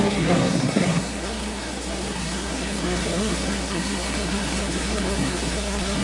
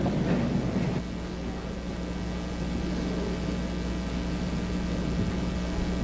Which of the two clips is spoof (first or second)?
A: first